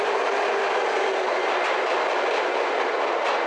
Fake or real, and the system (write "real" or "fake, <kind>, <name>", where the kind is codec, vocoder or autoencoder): real